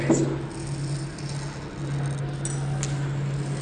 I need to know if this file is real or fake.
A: real